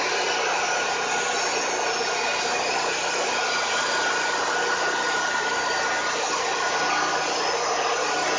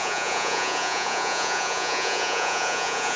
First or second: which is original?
first